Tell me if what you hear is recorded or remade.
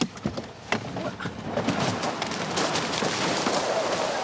recorded